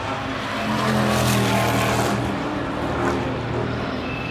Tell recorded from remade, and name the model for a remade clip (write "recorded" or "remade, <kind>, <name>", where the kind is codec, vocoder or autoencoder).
recorded